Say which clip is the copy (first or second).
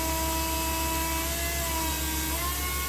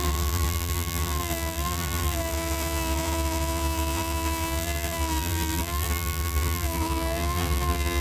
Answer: second